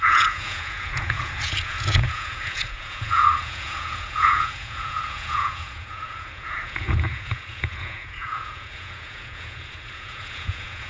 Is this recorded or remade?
remade